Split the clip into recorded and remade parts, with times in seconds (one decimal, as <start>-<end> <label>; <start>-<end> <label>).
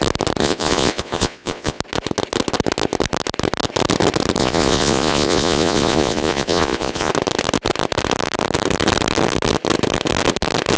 0.0-0.4 recorded; 0.4-1.8 remade; 1.8-4.4 recorded; 4.4-7.1 remade; 7.1-10.8 recorded